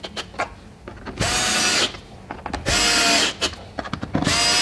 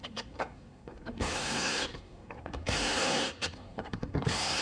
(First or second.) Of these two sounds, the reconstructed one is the second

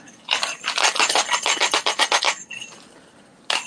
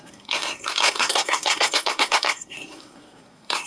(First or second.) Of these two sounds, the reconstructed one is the second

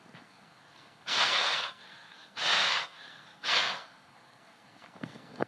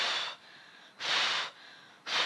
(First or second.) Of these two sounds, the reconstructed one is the first